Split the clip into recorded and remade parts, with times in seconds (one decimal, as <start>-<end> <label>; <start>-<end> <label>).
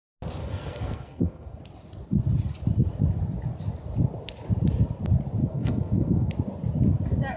0.0-0.4 recorded; 0.4-1.6 remade; 1.6-5.4 recorded; 5.4-6.3 remade; 6.3-7.4 recorded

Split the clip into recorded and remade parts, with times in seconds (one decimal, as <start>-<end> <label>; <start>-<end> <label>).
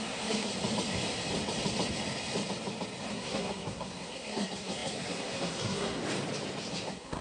0.0-0.5 remade; 0.5-3.1 recorded; 3.1-6.0 remade; 6.0-6.7 recorded; 6.7-7.2 remade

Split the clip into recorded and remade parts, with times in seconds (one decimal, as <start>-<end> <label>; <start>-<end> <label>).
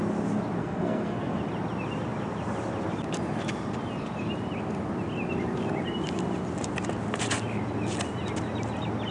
0.0-0.6 recorded; 0.6-1.4 remade; 1.4-9.1 recorded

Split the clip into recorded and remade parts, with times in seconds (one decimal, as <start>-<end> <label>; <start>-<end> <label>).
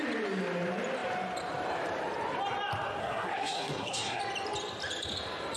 0.0-3.0 recorded; 3.0-4.2 remade; 4.2-5.6 recorded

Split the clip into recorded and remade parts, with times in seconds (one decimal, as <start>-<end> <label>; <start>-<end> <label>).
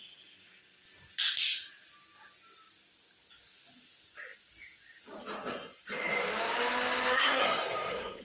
0.0-7.1 recorded; 7.1-8.2 remade